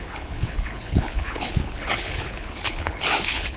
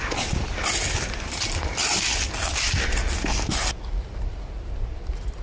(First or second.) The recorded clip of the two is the second